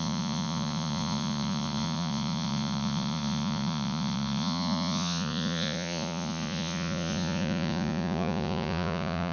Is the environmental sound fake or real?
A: fake